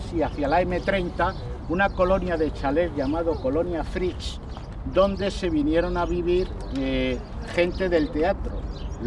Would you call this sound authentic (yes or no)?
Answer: yes